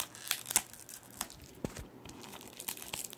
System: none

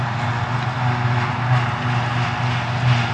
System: none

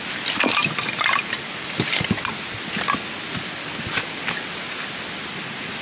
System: none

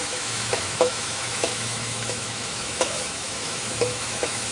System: autoencoder, DAC-VAE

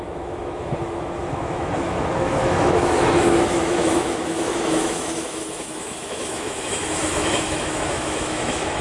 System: autoencoder, DAC-VAE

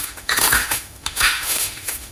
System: autoencoder, DAC-VAE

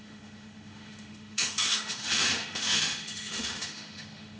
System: autoencoder, DAC-VAE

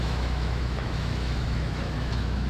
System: autoencoder, DAC-VAE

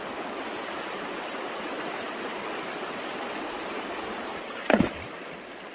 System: none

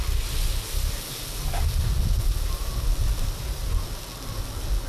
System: none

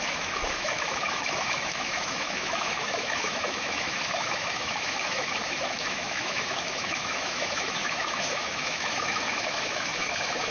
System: autoencoder, DAC-VAE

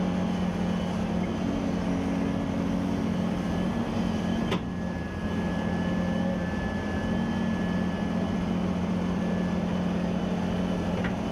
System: none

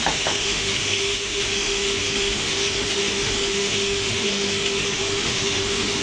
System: autoencoder, DAC-VAE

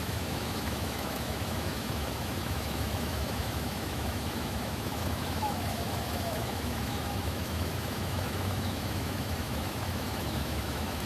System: autoencoder, DAC-VAE